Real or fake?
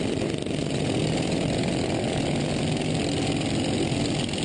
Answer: real